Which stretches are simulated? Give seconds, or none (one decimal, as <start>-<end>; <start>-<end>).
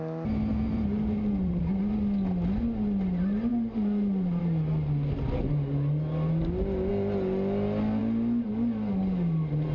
0.5-1.6; 3.5-4.4